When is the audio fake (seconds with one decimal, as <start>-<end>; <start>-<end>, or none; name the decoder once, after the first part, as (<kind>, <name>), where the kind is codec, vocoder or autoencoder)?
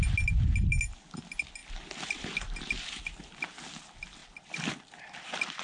none